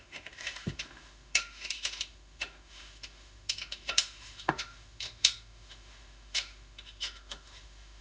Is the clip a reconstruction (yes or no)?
yes